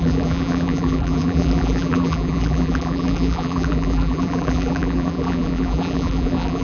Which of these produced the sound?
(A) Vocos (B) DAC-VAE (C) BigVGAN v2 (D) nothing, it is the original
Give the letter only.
C